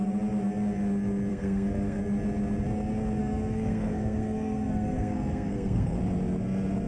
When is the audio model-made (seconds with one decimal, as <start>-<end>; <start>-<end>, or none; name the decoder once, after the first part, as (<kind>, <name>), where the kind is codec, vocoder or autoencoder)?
1.3-2.0 (codec, SNAC); 3.2-6.0